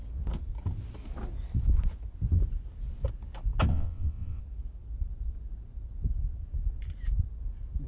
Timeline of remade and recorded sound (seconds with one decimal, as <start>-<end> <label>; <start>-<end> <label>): 0.0-3.7 recorded; 3.7-4.4 remade; 4.4-7.9 recorded